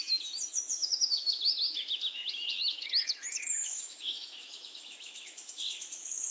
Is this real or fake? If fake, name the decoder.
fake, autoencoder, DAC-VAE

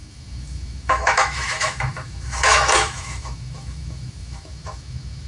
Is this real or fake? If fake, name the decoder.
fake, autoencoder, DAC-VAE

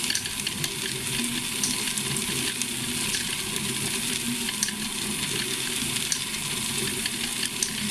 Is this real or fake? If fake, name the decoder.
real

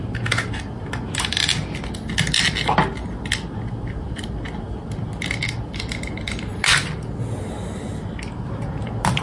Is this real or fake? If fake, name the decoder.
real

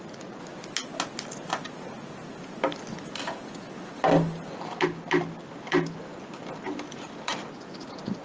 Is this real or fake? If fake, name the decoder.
real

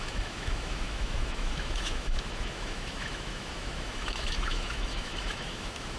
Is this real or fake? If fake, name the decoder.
fake, autoencoder, DAC-VAE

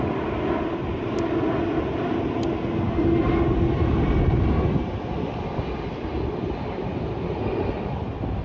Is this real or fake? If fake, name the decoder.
real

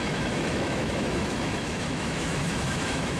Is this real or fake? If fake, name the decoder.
fake, autoencoder, DAC-VAE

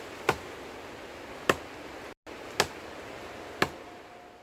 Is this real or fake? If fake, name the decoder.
real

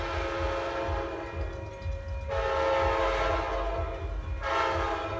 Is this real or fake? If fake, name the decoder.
real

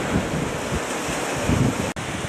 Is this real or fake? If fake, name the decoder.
real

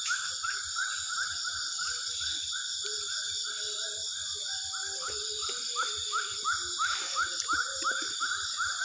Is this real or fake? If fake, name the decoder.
real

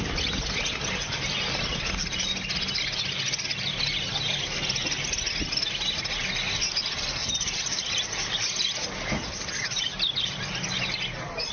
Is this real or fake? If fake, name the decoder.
real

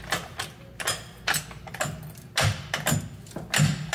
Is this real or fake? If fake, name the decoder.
real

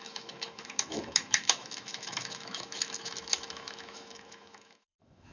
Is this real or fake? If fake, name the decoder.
fake, autoencoder, DAC-VAE